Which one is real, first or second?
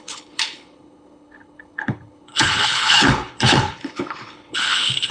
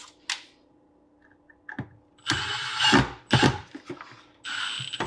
second